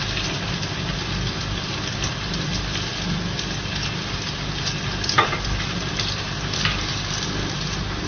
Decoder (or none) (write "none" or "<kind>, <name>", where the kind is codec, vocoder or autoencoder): none